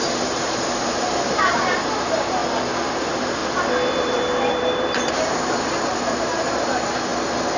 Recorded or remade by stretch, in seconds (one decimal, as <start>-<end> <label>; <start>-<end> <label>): 0.0-2.4 remade; 2.4-3.0 recorded; 3.0-3.4 remade; 3.4-3.9 recorded; 3.9-7.1 remade; 7.1-7.6 recorded